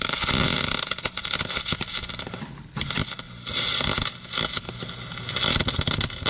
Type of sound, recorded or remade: recorded